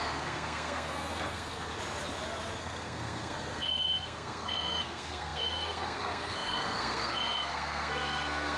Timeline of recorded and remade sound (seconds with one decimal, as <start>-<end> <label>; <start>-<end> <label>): 0.0-1.7 remade; 1.7-2.6 recorded; 2.6-8.6 remade